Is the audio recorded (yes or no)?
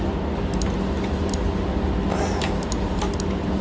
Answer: yes